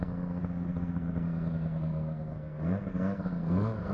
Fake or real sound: fake